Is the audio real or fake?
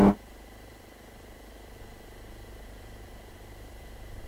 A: fake